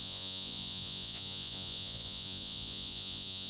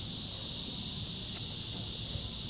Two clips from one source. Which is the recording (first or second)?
second